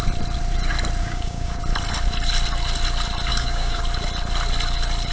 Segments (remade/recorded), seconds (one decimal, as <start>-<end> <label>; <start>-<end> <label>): 0.0-1.0 recorded; 1.0-1.6 remade; 1.6-3.3 recorded; 3.3-3.8 remade; 3.8-5.1 recorded